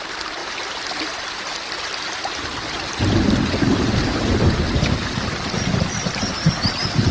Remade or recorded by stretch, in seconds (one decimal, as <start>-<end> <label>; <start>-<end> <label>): 0.0-7.1 recorded